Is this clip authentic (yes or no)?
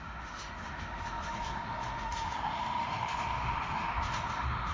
no